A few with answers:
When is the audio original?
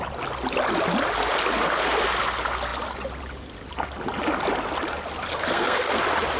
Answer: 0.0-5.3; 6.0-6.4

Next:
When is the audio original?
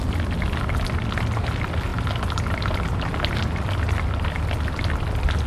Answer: 0.0-5.5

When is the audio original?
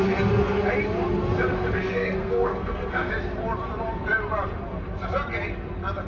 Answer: 0.0-1.5; 3.1-6.1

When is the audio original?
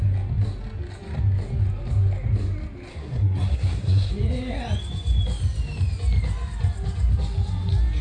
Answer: 0.0-2.9; 4.1-8.0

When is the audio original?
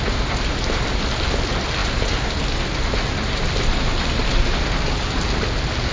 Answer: 0.0-5.9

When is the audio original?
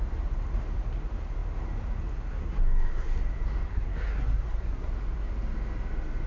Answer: 0.0-2.3; 3.2-3.7; 4.9-6.3